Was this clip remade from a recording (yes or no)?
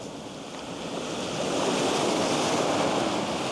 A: no